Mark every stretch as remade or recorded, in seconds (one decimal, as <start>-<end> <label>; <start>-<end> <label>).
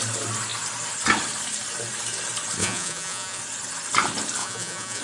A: 0.0-2.6 recorded; 2.6-3.4 remade; 3.4-4.4 recorded; 4.4-5.0 remade